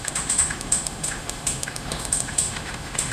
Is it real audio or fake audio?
fake